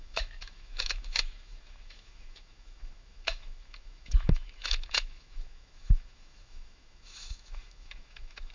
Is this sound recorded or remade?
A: remade